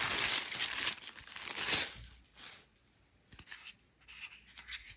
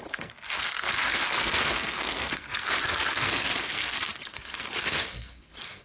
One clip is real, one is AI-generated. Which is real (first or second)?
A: first